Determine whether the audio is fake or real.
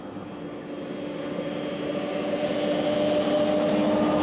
real